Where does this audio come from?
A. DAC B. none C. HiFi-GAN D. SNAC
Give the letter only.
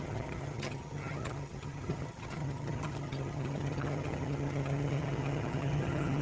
C